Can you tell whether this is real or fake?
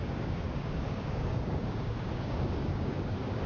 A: fake